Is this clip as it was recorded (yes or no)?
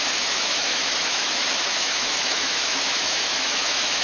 no